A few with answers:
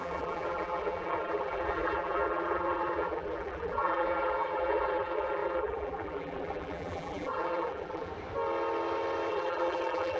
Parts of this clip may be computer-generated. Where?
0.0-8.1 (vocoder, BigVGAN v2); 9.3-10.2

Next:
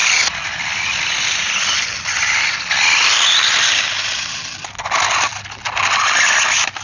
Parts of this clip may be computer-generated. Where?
none

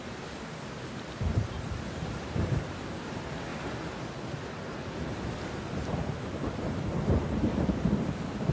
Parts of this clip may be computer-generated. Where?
0.0-3.5 (vocoder, BigVGAN v2); 6.9-8.5

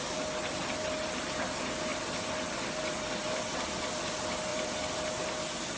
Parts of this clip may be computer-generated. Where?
1.9-3.8 (vocoder, BigVGAN v2); 4.5-5.1

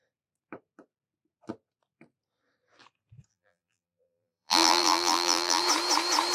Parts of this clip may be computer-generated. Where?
3.3-5.6 (vocoder, BigVGAN v2)